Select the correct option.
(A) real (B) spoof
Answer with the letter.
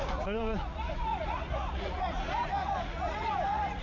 B